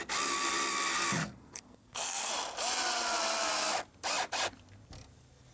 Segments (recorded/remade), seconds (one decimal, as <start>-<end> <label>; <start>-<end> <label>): 0.0-1.2 recorded; 1.2-2.3 remade; 2.3-5.5 recorded